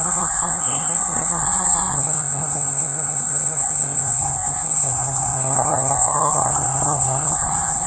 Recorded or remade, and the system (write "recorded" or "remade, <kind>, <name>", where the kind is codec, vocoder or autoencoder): remade, codec, SNAC